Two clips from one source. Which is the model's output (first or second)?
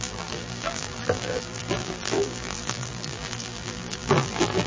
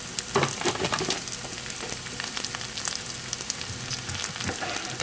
first